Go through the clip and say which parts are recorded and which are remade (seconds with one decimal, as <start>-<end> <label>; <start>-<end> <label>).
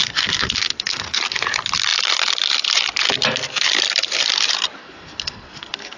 0.0-1.4 remade; 1.4-4.8 recorded; 4.8-6.0 remade